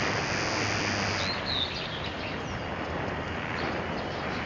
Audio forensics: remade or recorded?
recorded